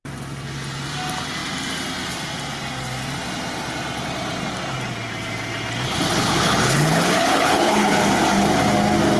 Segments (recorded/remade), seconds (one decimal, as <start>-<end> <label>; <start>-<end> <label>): 0.0-6.2 recorded; 6.2-7.9 remade; 7.9-9.2 recorded